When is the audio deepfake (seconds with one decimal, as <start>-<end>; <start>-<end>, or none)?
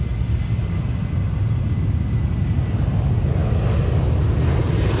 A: none